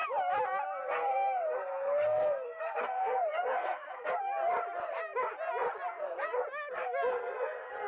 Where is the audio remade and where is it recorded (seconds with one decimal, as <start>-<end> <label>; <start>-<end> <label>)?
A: 0.0-0.8 recorded; 0.8-4.1 remade; 4.1-7.1 recorded; 7.1-7.9 remade